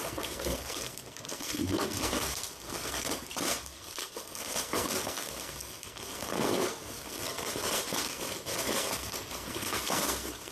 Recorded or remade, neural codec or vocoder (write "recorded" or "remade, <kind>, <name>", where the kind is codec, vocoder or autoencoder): remade, codec, SNAC